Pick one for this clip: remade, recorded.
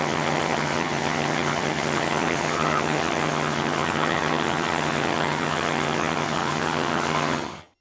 remade